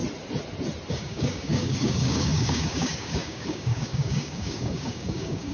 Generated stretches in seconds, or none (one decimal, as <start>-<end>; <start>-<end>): 0.9-5.5